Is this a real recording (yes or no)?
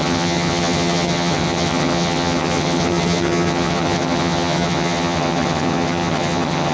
no